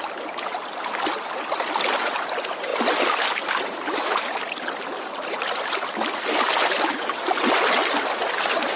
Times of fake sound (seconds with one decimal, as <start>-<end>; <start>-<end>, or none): none